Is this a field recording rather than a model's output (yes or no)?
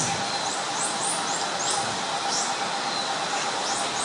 yes